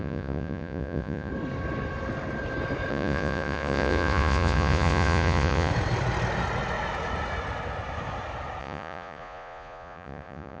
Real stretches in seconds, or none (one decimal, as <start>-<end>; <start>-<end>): 1.3-2.9; 5.7-8.6